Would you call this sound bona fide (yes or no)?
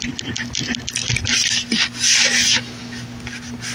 yes